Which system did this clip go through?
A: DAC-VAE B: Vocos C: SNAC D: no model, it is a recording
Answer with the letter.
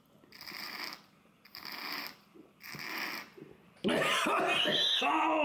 D